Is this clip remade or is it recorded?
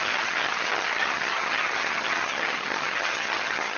remade